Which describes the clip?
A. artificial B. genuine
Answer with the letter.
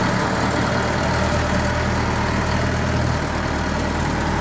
B